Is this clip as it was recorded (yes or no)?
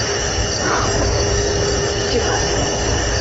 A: yes